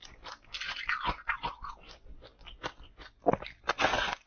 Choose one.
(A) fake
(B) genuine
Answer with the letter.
B